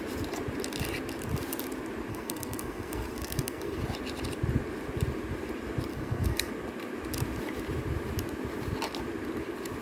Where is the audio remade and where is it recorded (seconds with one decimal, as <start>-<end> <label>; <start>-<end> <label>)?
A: 0.0-2.1 recorded; 2.1-3.8 remade; 3.8-5.9 recorded; 5.9-6.5 remade; 6.5-9.8 recorded